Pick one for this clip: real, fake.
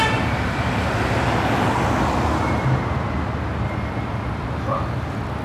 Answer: real